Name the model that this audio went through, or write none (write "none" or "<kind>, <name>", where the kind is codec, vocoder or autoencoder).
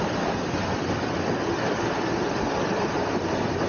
none